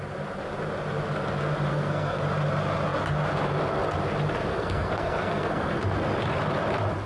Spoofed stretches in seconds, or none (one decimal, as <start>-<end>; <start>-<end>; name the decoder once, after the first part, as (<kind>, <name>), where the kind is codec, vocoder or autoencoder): 1.7-2.2 (codec, SNAC); 4.5-5.8